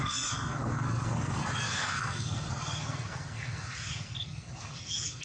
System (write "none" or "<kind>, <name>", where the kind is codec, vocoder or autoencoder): codec, SNAC